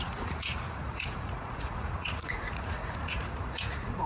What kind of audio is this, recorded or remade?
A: remade